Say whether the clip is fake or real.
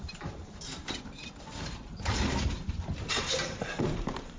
fake